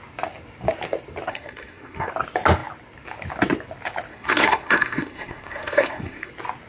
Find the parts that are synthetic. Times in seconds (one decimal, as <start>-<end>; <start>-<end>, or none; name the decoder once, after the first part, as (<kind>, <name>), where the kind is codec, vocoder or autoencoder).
1.3-2.1 (codec, SNAC); 4.1-6.3